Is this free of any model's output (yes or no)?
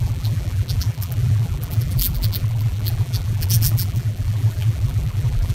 no